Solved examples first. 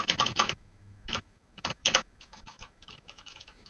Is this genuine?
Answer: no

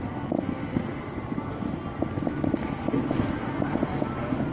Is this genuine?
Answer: yes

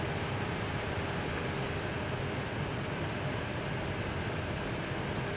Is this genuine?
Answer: yes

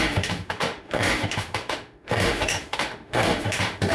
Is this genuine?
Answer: no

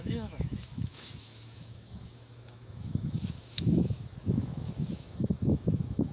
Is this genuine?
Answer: no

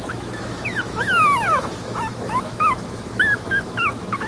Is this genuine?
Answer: no